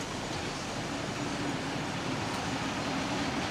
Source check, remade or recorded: recorded